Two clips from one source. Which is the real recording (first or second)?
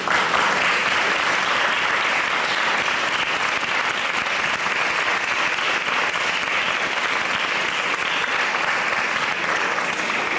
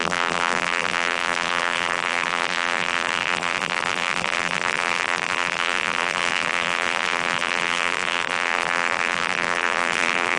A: first